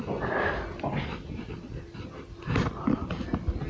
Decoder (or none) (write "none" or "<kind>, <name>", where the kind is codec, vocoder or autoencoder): none